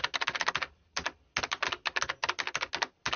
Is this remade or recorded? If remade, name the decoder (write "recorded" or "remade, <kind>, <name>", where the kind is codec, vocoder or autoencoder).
recorded